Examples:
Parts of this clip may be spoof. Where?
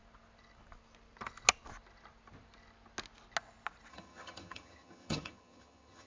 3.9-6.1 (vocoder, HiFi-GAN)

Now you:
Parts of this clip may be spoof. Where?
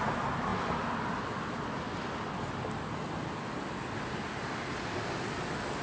none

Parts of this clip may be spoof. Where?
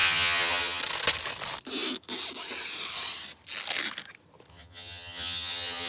0.0-0.8 (vocoder, HiFi-GAN); 4.5-5.9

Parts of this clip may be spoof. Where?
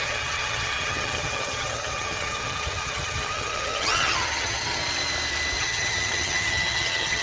0.0-4.8 (vocoder, HiFi-GAN); 5.6-7.2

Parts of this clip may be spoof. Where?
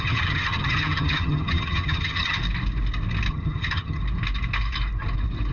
0.0-2.4 (vocoder, HiFi-GAN); 3.3-4.0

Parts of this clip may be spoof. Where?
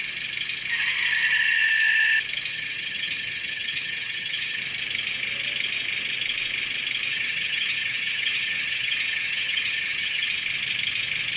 2.5-4.6 (vocoder, HiFi-GAN); 7.1-10.3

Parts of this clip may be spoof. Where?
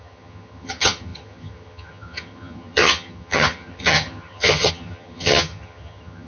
0.0-6.3 (vocoder, HiFi-GAN)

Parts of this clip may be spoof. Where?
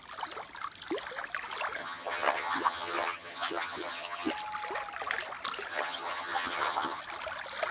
1.8-4.3 (vocoder, HiFi-GAN); 5.7-7.0